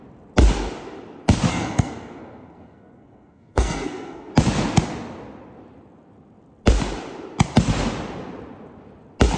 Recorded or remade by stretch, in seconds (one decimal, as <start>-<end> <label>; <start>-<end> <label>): 0.0-1.5 recorded; 1.5-4.3 remade; 4.3-9.4 recorded